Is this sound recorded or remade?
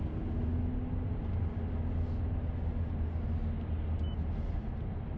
recorded